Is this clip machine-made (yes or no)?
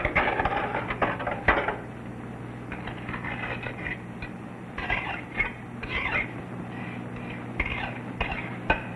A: no